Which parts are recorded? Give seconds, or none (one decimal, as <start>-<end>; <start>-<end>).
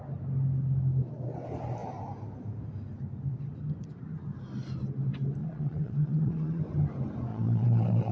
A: 0.0-5.4; 6.6-7.3